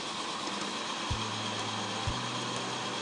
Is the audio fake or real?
real